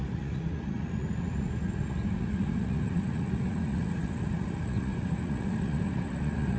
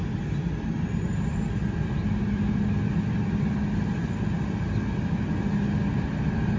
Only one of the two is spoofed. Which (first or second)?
first